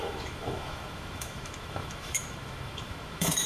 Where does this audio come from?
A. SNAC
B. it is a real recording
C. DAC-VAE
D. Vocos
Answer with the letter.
C